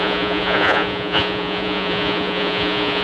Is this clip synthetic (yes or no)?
yes